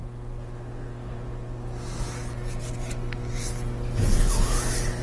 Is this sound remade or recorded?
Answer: recorded